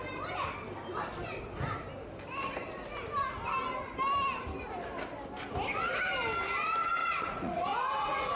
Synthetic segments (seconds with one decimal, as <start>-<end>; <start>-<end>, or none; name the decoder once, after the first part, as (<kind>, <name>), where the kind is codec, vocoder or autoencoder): 7.0-8.4 (vocoder, Vocos)